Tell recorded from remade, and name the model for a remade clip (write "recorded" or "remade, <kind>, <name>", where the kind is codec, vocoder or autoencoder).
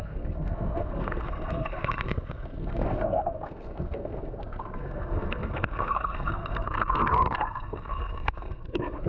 remade, codec, SNAC